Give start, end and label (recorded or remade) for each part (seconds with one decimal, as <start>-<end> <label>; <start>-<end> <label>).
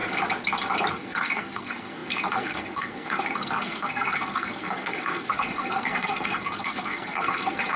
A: 0.0-0.9 recorded; 0.9-7.8 remade